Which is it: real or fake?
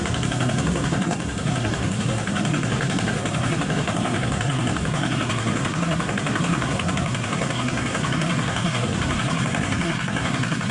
fake